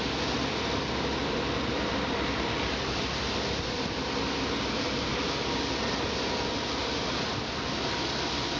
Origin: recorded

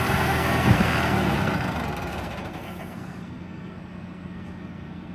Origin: remade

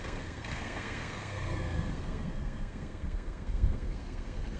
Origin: remade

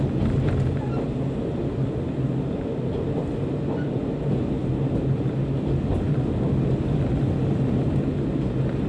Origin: recorded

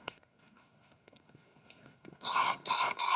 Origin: remade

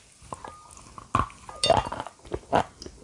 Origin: recorded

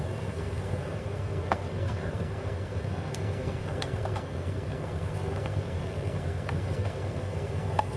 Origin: remade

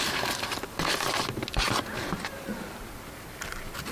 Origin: recorded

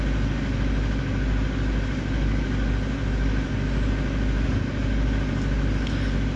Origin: recorded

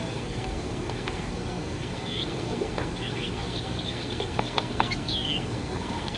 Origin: remade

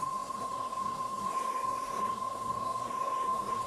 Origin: remade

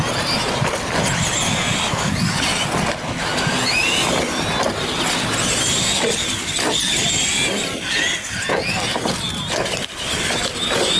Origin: recorded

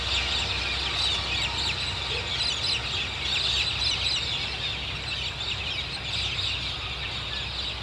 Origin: recorded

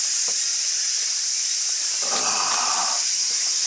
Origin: recorded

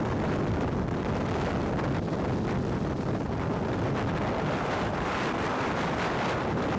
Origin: recorded